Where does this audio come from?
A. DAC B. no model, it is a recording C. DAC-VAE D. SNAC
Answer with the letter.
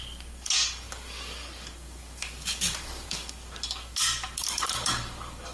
A